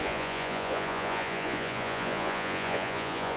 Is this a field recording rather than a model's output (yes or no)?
no